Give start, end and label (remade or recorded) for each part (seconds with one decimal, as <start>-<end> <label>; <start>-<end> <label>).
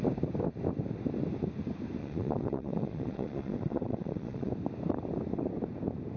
0.0-2.0 recorded; 2.0-4.5 remade; 4.5-6.2 recorded